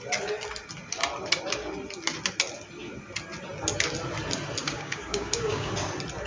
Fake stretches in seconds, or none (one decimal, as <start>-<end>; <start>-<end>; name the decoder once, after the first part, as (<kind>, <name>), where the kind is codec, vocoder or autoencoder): 4.6-5.7 (codec, DAC)